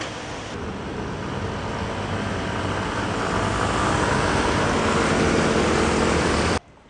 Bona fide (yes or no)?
yes